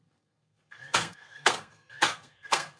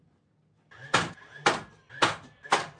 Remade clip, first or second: first